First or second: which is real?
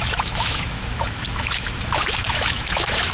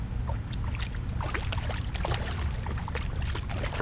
second